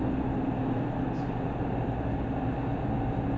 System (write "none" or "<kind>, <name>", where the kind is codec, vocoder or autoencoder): none